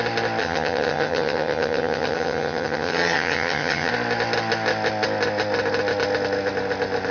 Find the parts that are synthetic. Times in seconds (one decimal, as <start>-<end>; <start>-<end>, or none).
0.4-3.9